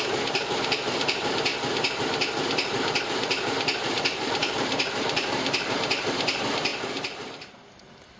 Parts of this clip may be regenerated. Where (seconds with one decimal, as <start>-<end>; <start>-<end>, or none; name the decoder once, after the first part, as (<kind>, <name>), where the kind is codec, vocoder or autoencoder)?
0.0-1.5 (vocoder, BigVGAN v2); 3.0-6.7